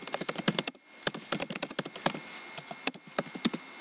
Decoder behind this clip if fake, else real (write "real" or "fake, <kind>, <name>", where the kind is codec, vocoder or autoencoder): real